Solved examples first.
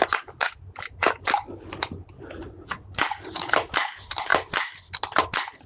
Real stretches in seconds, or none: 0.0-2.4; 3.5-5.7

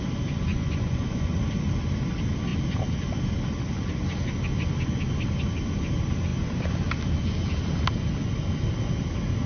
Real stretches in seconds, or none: 0.0-0.5; 1.4-9.5

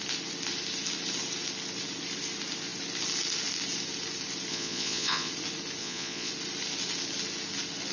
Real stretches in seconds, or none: 0.0-4.5; 5.3-5.8; 6.3-7.9

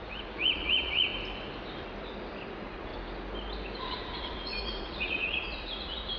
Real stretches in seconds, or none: 1.1-2.5; 2.9-3.8

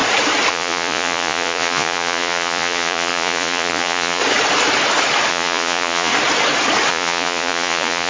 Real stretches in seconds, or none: 0.0-0.5; 4.2-5.3; 6.1-6.9

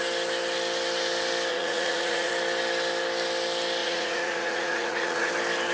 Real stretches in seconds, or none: 0.0-1.5; 2.3-3.8; 5.3-5.7

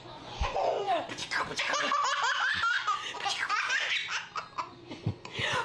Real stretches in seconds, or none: 1.2-4.6

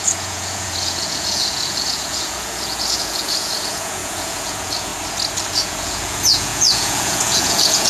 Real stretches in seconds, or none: 4.9-5.5